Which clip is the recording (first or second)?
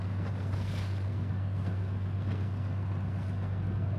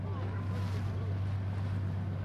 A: second